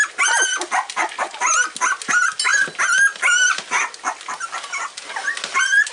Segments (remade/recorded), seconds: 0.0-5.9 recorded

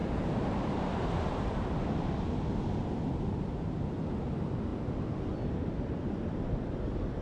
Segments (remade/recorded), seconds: 0.0-1.4 remade; 1.4-7.2 recorded

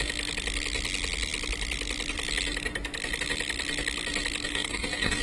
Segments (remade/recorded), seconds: 0.0-4.5 recorded; 4.5-5.2 remade

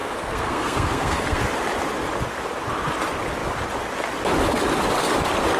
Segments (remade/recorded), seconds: 0.0-1.4 remade; 1.4-5.6 recorded

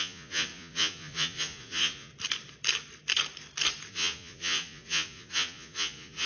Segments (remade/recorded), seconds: 0.0-2.1 remade; 2.1-3.9 recorded; 3.9-6.3 remade

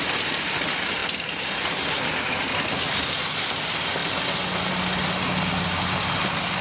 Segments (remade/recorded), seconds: 0.0-6.6 recorded

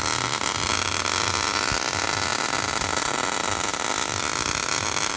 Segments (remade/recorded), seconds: 0.0-5.2 recorded

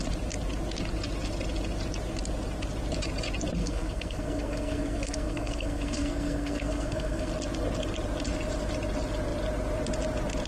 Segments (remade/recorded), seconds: 0.0-3.6 recorded; 3.6-7.3 remade; 7.3-10.5 recorded